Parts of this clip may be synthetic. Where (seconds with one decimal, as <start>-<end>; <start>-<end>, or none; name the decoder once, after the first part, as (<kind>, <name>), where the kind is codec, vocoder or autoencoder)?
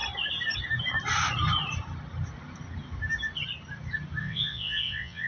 4.2-5.3 (vocoder, WaveNeXt)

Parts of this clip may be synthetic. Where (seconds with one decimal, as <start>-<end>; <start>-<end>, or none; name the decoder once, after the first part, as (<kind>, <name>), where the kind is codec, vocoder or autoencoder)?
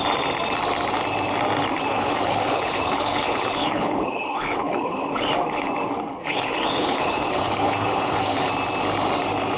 1.9-5.2 (codec, HILCodec); 6.2-8.5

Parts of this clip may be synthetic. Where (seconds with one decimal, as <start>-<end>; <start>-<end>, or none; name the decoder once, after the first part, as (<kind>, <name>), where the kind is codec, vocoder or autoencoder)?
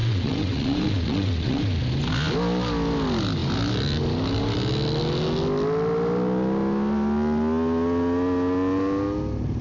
0.0-1.6 (vocoder, WaveNeXt)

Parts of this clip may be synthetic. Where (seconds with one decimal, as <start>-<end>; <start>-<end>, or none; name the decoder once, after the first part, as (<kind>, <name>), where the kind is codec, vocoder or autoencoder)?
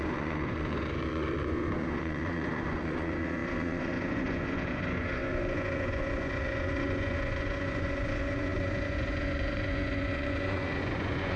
0.0-11.4 (vocoder, Vocos)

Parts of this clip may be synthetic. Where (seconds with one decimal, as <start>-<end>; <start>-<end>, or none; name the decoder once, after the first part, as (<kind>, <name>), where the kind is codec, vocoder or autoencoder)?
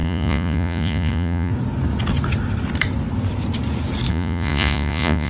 0.0-1.5 (vocoder, Vocos); 4.1-5.3